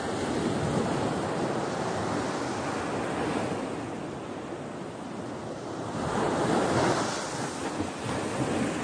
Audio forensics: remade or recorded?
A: recorded